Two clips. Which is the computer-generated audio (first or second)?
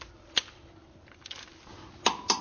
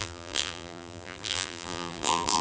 second